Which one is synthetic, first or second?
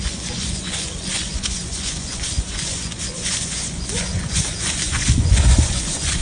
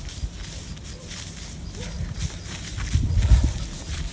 first